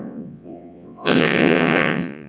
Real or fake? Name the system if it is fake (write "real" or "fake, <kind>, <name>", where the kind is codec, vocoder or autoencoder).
fake, vocoder, WaveNeXt